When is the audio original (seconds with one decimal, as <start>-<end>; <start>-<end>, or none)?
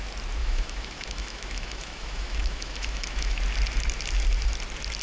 0.0-0.4; 3.4-5.0